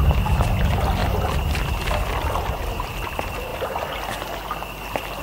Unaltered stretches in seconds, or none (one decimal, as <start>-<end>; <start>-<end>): 0.0-5.2